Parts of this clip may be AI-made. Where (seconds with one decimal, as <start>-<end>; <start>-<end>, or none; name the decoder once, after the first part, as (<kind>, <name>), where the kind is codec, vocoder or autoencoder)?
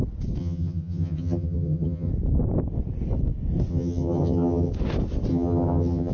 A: 0.4-2.1 (vocoder, HiFi-GAN); 3.7-4.7; 5.3-6.1